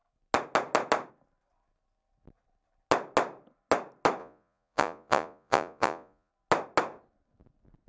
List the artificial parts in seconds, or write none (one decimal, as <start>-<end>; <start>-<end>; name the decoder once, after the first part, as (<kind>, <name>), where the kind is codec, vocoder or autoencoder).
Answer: 4.2-6.3 (vocoder, Vocos)